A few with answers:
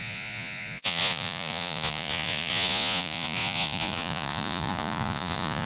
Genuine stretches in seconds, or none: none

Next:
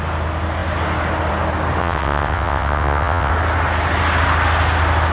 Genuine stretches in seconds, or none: 0.0-1.8; 3.3-5.1

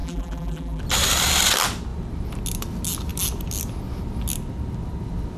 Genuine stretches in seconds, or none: 0.8-5.4

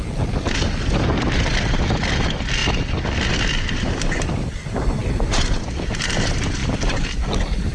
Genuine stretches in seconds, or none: 0.0-7.7

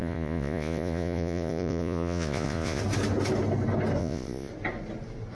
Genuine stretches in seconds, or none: 2.8-4.0; 4.5-5.3

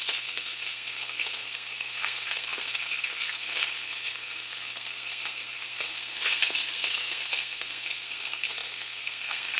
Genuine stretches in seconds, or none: none

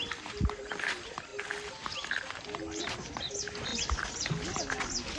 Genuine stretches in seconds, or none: 1.3-2.8

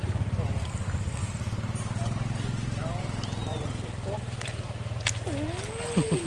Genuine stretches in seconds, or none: 0.0-1.2; 5.0-6.3